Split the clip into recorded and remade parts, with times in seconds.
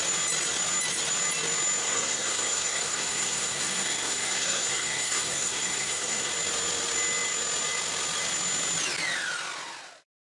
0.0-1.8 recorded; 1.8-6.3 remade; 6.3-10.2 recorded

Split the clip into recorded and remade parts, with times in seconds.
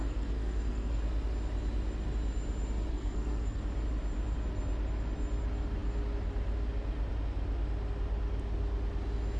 0.0-1.0 remade; 1.0-2.9 recorded; 2.9-3.6 remade; 3.6-9.4 recorded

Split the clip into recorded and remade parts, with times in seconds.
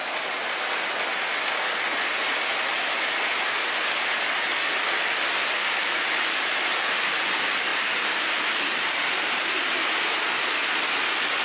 0.0-7.7 recorded; 7.7-9.5 remade; 9.5-11.4 recorded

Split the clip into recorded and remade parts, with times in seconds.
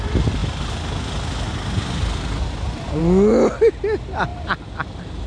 0.0-5.3 recorded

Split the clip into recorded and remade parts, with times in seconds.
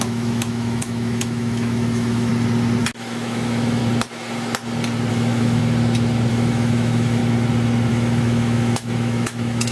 0.0-2.3 remade; 2.3-2.8 recorded; 2.8-3.8 remade; 3.8-5.1 recorded; 5.1-5.6 remade; 5.6-6.3 recorded; 6.3-7.2 remade; 7.2-7.9 recorded; 7.9-9.7 remade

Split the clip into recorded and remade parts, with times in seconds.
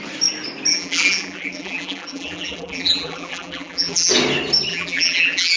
0.0-0.7 recorded; 0.7-4.1 remade; 4.1-4.7 recorded; 4.7-5.6 remade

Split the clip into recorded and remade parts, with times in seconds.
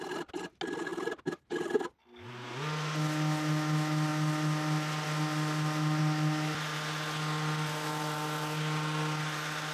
0.0-9.7 recorded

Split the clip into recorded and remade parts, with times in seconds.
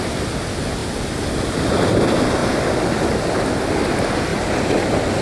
0.0-4.3 recorded; 4.3-5.2 remade